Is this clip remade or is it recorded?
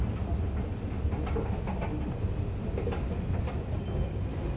recorded